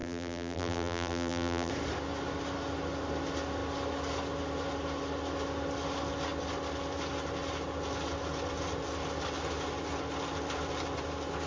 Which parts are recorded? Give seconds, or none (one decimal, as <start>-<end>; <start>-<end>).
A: 1.7-11.5